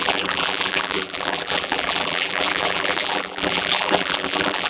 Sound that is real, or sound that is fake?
fake